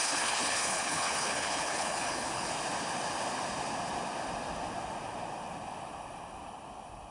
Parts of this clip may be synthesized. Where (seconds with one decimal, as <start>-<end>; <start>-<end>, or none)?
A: 0.0-2.5